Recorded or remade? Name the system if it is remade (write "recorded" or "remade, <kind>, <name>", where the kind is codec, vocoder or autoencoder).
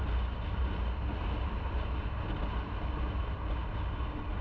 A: recorded